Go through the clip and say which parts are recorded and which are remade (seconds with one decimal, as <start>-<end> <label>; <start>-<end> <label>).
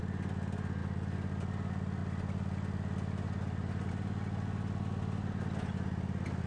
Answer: 0.0-6.5 recorded